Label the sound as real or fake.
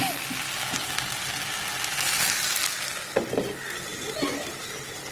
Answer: real